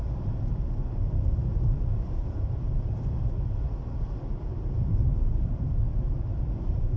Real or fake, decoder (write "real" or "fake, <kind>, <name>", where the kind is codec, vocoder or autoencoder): fake, vocoder, BigVGAN v2